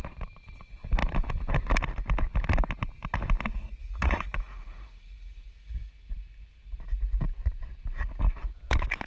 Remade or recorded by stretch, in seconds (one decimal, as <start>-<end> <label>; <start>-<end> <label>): 0.0-3.8 recorded; 3.8-5.9 remade; 5.9-9.1 recorded